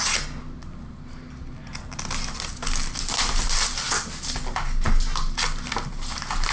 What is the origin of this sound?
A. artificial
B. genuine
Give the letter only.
B